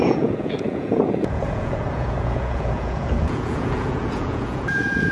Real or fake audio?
fake